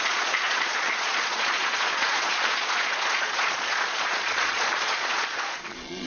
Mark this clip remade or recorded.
remade